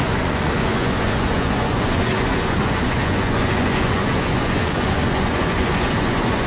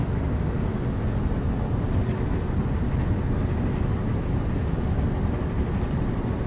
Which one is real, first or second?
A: second